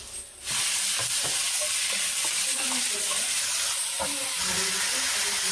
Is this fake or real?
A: real